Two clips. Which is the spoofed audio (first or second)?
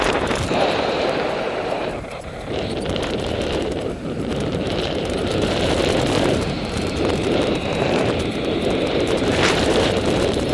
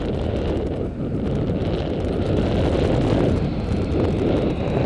first